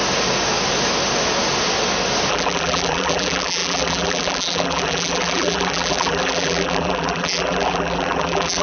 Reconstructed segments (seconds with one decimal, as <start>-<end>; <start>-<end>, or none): 2.3-8.6